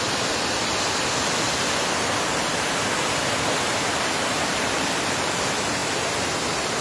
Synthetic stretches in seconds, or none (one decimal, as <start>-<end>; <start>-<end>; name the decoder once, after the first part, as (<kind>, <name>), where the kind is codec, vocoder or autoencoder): none